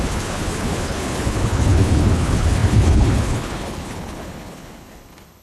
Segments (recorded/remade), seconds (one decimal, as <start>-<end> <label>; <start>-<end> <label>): 0.0-5.4 remade